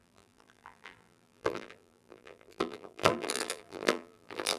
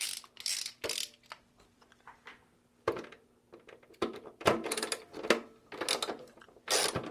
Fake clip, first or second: first